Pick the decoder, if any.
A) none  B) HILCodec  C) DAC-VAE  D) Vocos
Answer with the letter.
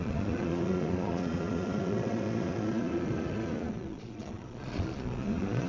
D